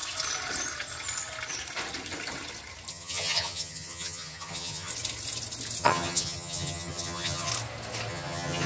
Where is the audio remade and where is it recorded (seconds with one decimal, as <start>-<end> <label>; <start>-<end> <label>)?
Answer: 0.0-2.9 recorded; 2.9-4.9 remade; 4.9-5.8 recorded; 5.8-7.5 remade; 7.5-8.1 recorded; 8.1-8.7 remade

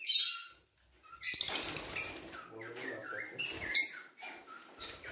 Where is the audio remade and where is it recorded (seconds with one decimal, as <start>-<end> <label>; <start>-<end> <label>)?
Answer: 0.0-5.1 recorded